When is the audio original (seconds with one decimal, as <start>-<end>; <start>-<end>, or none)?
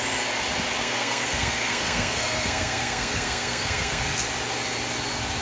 0.0-0.8; 4.0-5.4